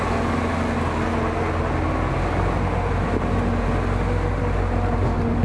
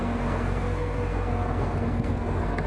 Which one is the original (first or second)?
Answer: first